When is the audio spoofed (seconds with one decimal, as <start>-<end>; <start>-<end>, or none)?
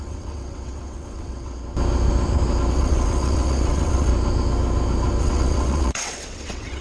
0.0-1.6; 2.7-4.1; 5.2-6.8